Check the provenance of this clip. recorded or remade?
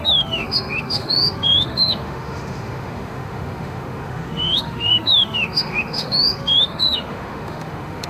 remade